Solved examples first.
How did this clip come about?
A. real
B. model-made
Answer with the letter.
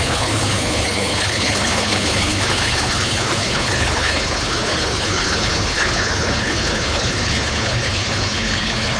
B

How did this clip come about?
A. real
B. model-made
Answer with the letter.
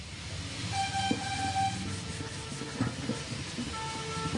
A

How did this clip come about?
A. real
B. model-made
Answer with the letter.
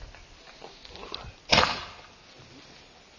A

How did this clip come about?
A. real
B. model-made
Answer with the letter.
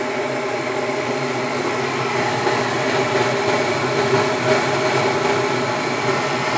A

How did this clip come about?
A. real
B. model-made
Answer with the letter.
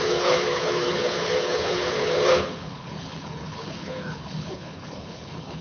B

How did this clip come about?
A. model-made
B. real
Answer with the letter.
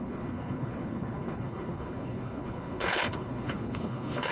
A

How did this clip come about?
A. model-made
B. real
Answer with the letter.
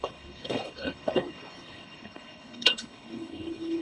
A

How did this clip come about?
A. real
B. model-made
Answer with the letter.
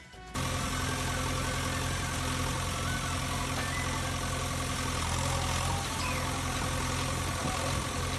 A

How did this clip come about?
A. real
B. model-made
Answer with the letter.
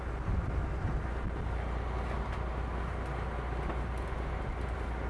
A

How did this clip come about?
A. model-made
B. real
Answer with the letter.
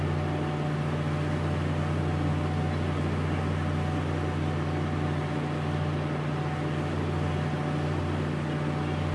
B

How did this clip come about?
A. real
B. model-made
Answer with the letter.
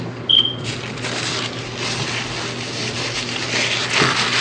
A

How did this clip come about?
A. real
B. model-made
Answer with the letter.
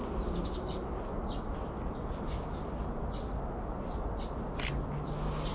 A